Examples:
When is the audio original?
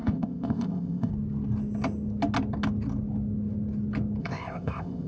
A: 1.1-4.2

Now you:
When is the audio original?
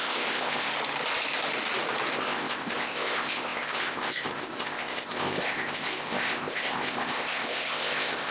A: 0.7-2.1